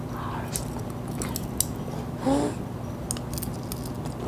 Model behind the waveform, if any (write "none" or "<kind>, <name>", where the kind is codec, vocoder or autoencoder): none